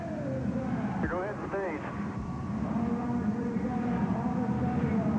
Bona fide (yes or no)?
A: yes